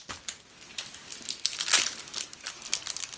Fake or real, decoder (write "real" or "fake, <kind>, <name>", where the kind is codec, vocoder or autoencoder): real